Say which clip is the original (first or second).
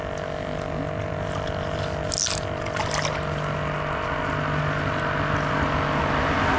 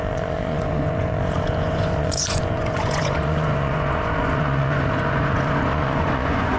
first